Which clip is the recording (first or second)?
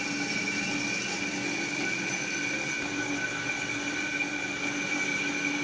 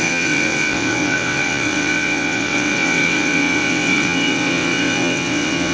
first